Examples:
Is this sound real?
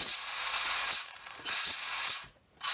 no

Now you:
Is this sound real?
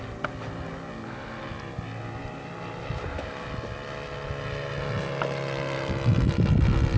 yes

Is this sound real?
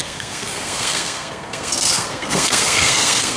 no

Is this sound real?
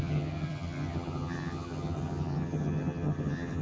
no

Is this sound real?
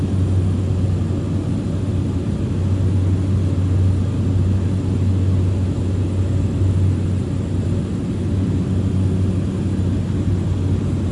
yes